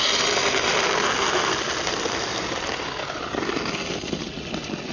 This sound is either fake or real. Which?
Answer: real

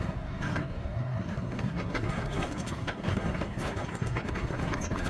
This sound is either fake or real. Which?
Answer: fake